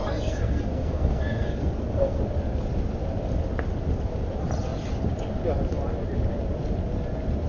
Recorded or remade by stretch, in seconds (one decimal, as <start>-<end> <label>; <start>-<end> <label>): 0.0-2.2 remade; 2.2-7.5 recorded